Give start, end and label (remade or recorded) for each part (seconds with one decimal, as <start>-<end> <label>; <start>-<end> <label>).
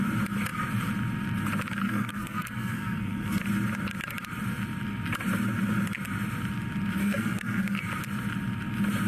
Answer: 0.0-1.8 recorded; 1.8-3.4 remade; 3.4-7.0 recorded; 7.0-7.8 remade; 7.8-9.1 recorded